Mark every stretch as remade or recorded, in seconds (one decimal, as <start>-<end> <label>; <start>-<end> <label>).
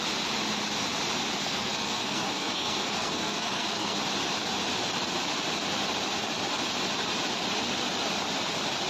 0.0-1.4 recorded; 1.4-4.0 remade; 4.0-8.9 recorded